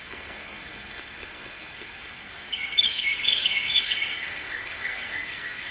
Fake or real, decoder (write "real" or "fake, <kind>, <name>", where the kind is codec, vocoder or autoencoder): fake, codec, SNAC